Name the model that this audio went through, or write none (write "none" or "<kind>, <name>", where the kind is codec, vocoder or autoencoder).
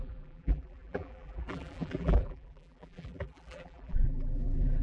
vocoder, BigVGAN v2